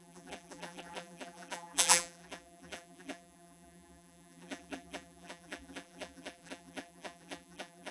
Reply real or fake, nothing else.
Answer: fake